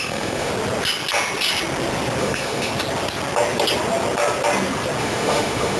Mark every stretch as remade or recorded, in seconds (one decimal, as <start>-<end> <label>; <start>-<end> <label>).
0.0-0.5 remade; 0.5-2.2 recorded; 2.2-2.7 remade; 2.7-5.0 recorded; 5.0-5.8 remade